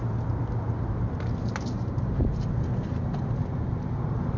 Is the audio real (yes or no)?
yes